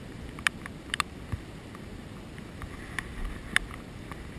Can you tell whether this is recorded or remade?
recorded